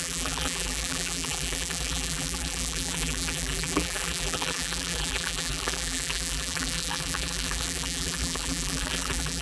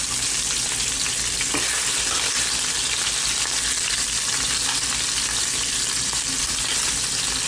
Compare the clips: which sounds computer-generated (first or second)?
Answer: first